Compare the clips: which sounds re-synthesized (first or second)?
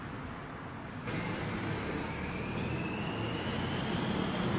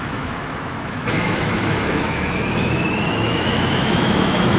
second